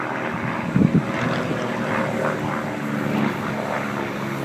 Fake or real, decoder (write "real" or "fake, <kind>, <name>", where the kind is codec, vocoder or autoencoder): real